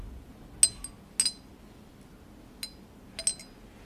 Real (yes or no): yes